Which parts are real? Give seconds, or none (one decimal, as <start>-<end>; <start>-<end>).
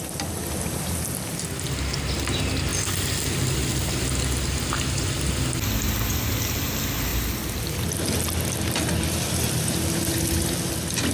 0.0-7.1; 7.8-11.1